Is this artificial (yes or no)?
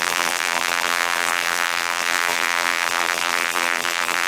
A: yes